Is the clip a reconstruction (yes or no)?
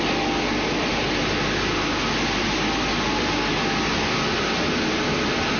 no